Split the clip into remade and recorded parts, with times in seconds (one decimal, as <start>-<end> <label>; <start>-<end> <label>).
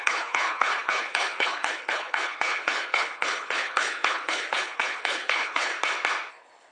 0.0-5.7 remade; 5.7-6.3 recorded; 6.3-6.7 remade